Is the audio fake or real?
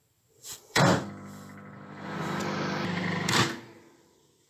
fake